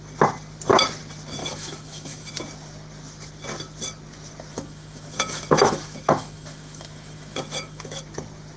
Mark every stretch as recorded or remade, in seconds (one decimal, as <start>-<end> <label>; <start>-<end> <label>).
0.0-1.4 recorded; 1.4-2.3 remade; 2.3-4.5 recorded; 4.5-8.0 remade; 8.0-8.6 recorded